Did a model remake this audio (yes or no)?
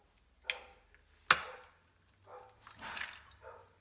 no